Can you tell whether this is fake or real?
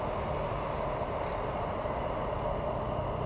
real